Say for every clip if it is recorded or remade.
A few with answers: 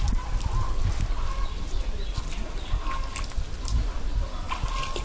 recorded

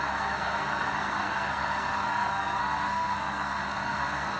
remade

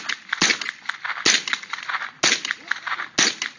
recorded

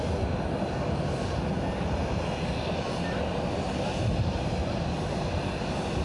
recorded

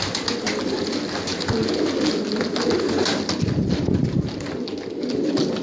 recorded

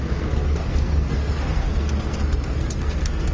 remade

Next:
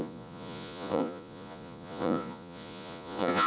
remade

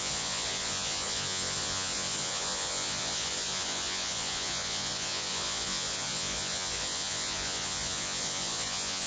remade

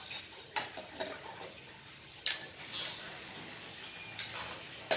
recorded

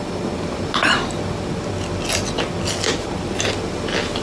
recorded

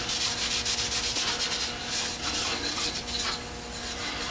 recorded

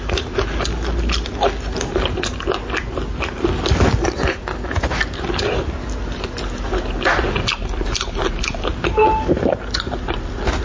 recorded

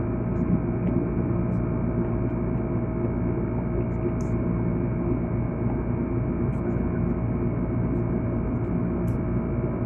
recorded